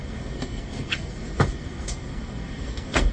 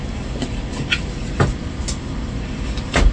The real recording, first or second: second